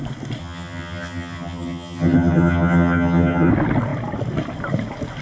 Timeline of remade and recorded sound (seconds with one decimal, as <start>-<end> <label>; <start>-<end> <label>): 0.0-0.4 recorded; 0.4-3.5 remade; 3.5-5.2 recorded